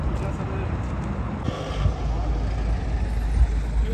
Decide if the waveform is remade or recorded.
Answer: recorded